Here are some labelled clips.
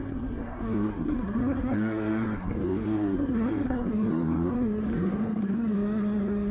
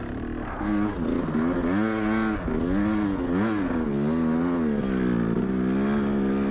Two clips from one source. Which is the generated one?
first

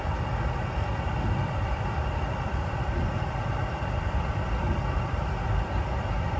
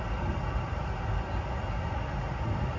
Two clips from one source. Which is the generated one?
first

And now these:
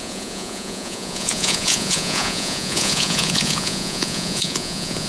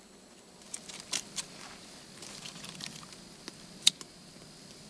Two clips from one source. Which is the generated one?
first